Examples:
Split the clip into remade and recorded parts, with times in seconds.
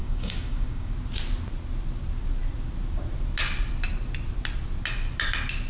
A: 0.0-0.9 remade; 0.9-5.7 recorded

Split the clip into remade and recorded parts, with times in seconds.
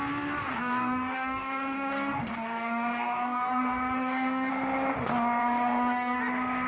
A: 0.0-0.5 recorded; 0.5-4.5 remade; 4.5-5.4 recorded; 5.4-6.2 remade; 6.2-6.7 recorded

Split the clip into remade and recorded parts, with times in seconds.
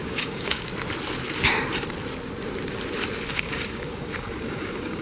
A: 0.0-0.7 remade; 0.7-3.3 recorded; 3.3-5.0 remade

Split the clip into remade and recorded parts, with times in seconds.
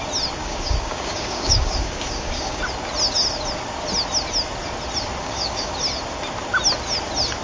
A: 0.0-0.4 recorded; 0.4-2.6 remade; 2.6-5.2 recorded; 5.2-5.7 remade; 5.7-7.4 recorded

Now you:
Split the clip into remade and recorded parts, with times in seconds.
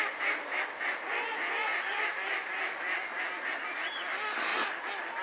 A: 0.0-5.2 recorded